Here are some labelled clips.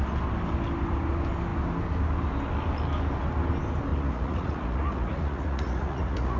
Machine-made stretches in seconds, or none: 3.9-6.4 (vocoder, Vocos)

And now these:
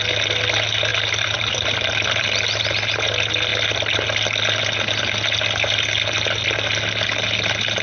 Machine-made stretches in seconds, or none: 0.9-2.3 (vocoder, BigVGAN v2)

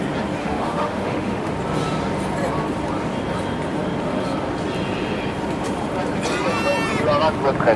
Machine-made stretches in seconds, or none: 0.4-1.5 (autoencoder, DAC-VAE)

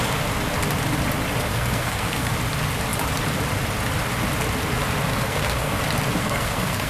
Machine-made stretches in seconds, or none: 1.5-2.3 (codec, SNAC); 5.1-5.8; 6.2-6.9

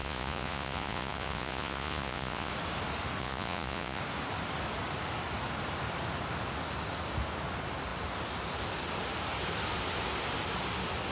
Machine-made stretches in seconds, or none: 0.0-2.5 (vocoder, Vocos); 3.2-4.0

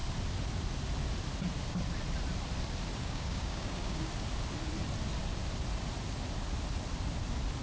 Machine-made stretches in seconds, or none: 3.0-4.1 (codec, DAC)

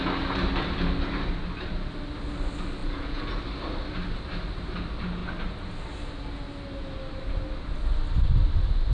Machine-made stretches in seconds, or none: 2.8-3.4 (vocoder, Vocos)